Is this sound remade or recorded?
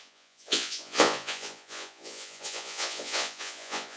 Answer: remade